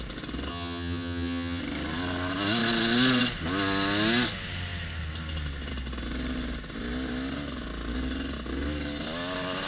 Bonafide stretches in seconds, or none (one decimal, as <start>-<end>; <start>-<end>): 0.0-0.5; 1.6-9.7